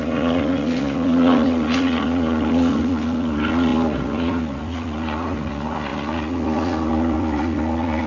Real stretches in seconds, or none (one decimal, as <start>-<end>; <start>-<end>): none